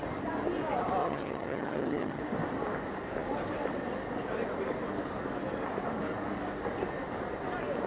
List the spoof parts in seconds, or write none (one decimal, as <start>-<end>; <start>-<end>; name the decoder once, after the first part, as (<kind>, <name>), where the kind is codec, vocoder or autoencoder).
1.0-2.2 (vocoder, HiFi-GAN)